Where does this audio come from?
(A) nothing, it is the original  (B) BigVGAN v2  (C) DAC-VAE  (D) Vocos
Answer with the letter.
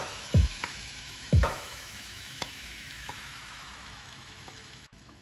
C